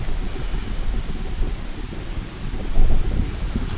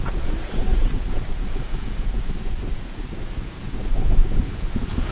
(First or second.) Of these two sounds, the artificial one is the second